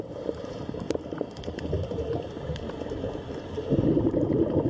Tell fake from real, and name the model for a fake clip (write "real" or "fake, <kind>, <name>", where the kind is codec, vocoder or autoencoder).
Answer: fake, vocoder, BigVGAN v2